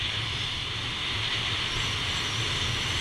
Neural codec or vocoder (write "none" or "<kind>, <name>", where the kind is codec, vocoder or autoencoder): none